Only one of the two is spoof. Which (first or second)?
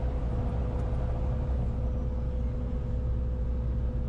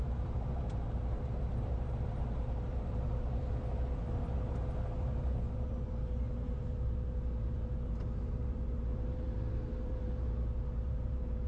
second